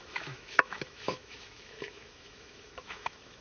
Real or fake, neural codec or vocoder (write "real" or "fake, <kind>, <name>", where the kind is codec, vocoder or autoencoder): fake, autoencoder, DAC-VAE